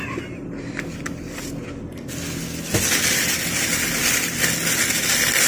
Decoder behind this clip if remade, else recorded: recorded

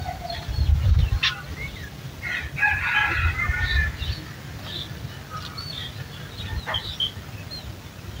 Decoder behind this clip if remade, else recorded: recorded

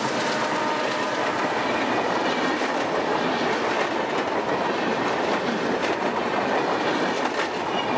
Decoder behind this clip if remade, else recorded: recorded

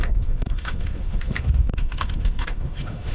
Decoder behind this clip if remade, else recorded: remade, autoencoder, DAC-VAE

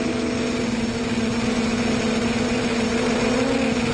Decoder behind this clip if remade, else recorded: recorded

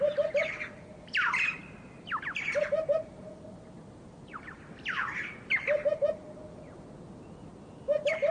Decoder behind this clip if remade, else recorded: recorded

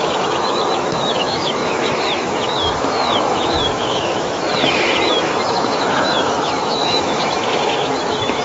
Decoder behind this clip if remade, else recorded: remade, autoencoder, DAC-VAE